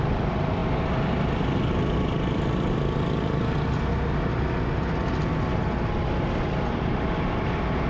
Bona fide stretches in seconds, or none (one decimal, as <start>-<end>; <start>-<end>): 0.0-7.9